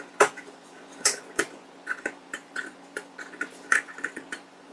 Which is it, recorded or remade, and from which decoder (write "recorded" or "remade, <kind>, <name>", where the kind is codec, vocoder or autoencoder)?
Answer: remade, vocoder, Vocos